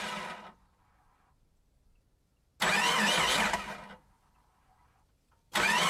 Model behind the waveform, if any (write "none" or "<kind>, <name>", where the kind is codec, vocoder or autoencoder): none